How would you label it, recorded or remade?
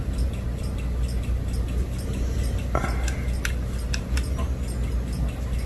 recorded